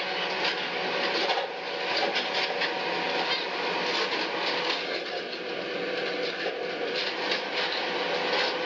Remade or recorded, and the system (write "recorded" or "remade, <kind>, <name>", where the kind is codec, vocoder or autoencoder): recorded